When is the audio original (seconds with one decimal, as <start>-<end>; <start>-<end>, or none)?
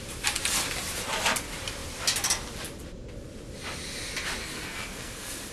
0.0-4.4